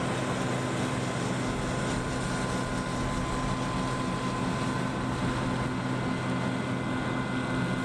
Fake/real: real